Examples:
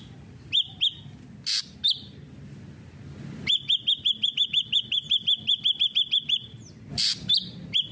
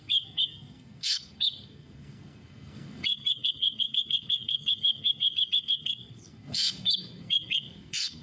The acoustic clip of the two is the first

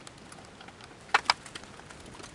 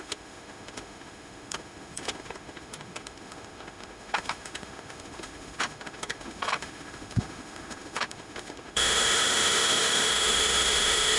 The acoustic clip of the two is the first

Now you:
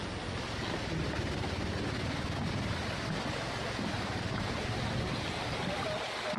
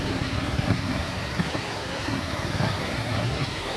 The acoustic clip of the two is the first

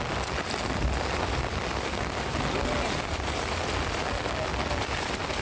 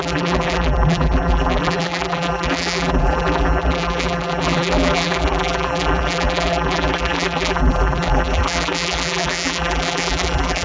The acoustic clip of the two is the first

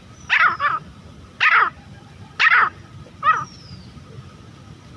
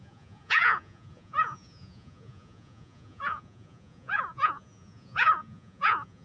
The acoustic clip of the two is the first